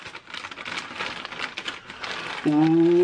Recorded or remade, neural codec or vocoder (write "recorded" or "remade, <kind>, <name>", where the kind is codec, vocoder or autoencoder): recorded